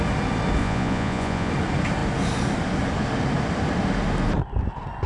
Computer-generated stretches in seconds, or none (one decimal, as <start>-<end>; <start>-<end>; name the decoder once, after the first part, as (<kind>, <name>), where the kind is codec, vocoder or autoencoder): 0.6-1.5 (vocoder, Vocos)